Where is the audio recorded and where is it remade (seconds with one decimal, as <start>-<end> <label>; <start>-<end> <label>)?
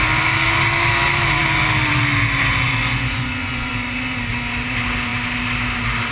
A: 0.0-2.8 recorded; 2.8-3.7 remade; 3.7-6.1 recorded